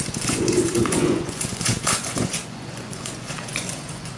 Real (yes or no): no